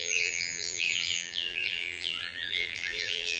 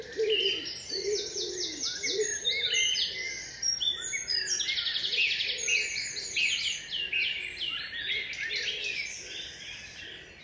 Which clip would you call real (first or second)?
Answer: second